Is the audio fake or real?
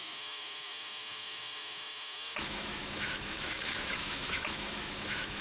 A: fake